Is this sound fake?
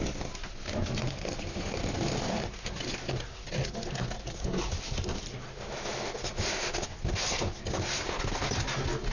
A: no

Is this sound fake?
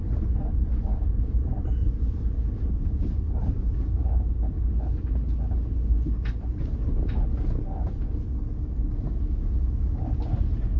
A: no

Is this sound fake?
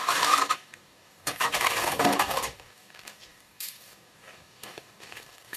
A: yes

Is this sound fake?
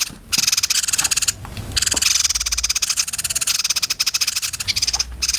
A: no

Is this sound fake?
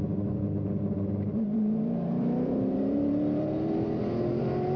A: yes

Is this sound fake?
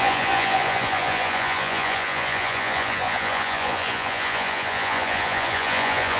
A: yes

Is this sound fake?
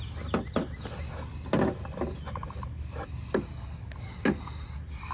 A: no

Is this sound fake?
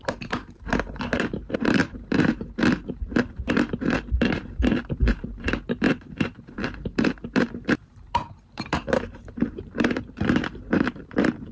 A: yes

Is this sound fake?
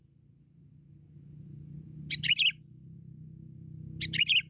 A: no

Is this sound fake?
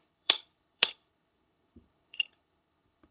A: yes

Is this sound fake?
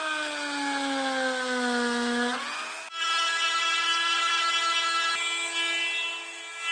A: no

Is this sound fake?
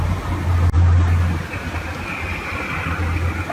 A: no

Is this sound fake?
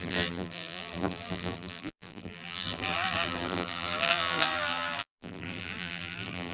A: yes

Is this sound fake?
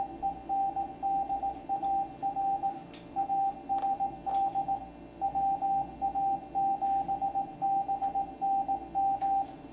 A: no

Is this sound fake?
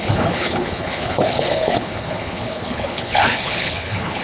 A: yes